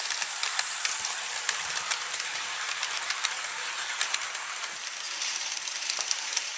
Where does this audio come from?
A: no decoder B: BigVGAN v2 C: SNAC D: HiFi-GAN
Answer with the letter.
B